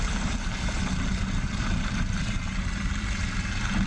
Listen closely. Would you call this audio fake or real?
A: fake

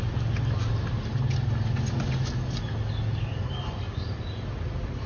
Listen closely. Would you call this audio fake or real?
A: real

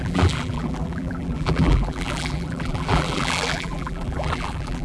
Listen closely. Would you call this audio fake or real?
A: fake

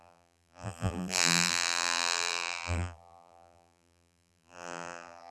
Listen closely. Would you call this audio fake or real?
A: fake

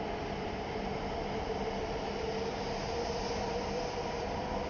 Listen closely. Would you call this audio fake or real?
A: real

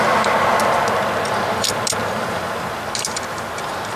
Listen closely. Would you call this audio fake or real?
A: real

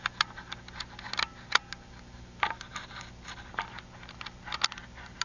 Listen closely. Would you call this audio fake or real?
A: real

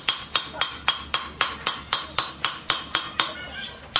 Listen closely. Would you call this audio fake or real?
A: real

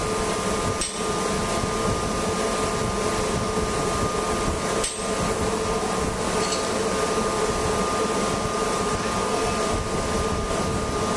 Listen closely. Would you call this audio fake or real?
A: real